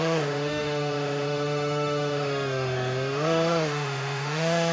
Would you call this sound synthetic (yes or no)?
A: yes